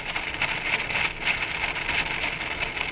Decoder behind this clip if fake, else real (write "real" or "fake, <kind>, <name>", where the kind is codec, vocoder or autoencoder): real